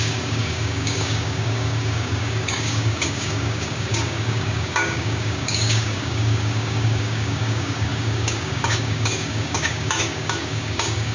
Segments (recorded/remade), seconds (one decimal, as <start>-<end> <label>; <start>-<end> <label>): 0.0-11.1 remade